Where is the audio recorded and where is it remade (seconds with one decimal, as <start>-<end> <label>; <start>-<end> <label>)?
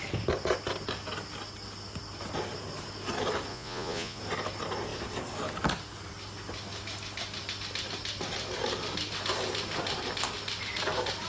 0.0-3.5 recorded; 3.5-4.2 remade; 4.2-11.3 recorded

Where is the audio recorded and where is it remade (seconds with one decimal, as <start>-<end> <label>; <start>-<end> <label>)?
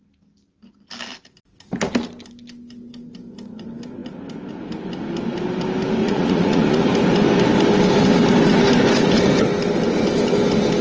0.0-6.0 recorded; 6.0-6.9 remade; 6.9-10.8 recorded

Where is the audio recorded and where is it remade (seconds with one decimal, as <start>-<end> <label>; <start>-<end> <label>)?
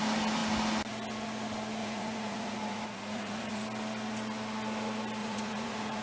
0.0-1.8 recorded; 1.8-3.6 remade; 3.6-5.2 recorded; 5.2-6.0 remade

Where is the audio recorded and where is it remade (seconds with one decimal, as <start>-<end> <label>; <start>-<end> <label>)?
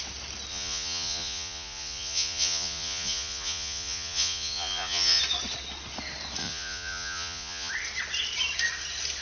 0.0-0.5 recorded; 0.5-5.2 remade; 5.2-6.4 recorded; 6.4-7.7 remade; 7.7-9.2 recorded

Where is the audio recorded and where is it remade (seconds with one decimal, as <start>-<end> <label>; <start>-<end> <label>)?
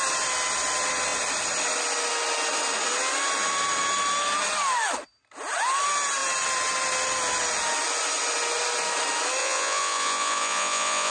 0.0-9.4 recorded; 9.4-11.1 remade